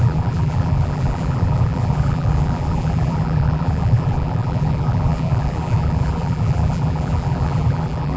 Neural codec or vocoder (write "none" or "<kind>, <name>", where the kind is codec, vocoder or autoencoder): vocoder, BigVGAN v2